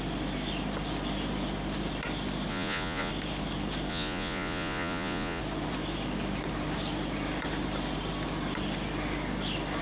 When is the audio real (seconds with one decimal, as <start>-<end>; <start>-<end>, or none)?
0.0-2.5; 3.1-3.9; 5.4-9.8